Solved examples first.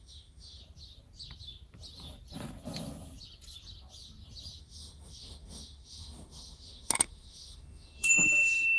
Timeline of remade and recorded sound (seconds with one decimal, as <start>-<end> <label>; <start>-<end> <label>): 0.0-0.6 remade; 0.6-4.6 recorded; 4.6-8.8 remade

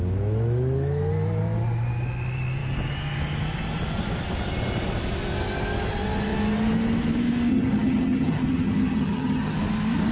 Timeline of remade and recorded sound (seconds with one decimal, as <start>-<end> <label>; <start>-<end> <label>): 0.0-7.5 recorded; 7.5-9.6 remade; 9.6-10.1 recorded

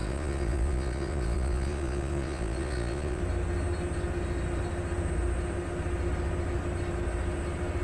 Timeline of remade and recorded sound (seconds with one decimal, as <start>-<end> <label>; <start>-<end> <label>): 0.0-3.2 remade; 3.2-7.8 recorded